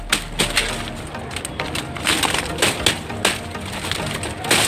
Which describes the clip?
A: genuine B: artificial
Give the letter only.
A